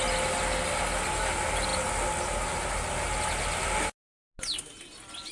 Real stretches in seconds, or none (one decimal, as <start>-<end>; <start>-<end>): 0.0-5.3